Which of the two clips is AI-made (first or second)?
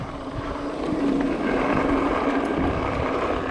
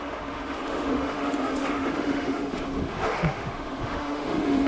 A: second